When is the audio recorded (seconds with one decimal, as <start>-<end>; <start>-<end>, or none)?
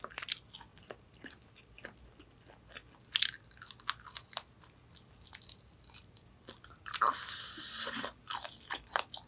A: 0.0-0.7; 1.5-9.3